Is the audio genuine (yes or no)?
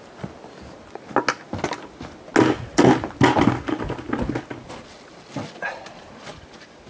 yes